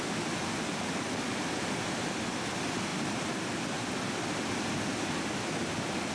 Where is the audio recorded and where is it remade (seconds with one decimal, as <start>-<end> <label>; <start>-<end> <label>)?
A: 0.0-6.1 recorded